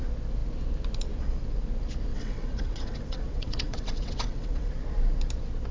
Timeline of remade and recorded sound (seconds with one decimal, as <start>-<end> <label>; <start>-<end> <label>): 0.0-2.1 recorded; 2.1-4.7 remade; 4.7-5.7 recorded